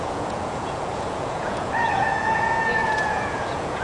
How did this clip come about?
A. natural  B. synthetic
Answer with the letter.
B